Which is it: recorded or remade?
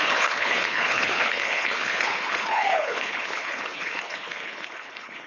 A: remade